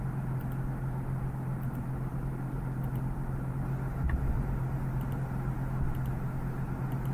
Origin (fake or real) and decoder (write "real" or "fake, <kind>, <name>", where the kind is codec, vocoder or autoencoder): real